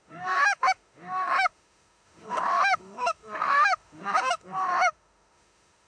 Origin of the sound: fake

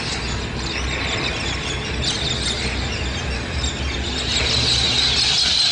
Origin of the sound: real